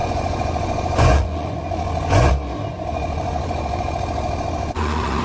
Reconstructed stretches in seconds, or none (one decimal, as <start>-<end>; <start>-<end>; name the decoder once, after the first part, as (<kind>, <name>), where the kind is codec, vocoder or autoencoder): 0.0-2.3 (vocoder, Vocos); 2.7-5.2